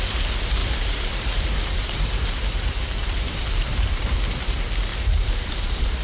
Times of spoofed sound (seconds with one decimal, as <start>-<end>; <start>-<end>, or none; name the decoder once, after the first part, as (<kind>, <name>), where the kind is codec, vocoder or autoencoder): 0.6-4.2 (vocoder, BigVGAN v2); 4.9-5.5